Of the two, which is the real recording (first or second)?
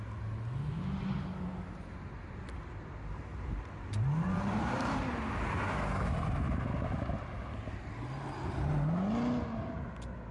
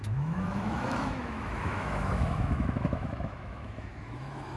first